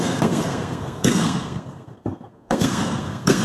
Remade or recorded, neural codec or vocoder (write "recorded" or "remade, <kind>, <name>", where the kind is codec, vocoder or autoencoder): remade, codec, SNAC